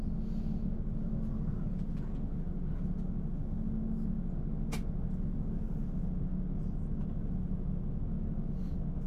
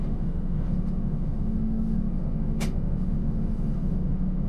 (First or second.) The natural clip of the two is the first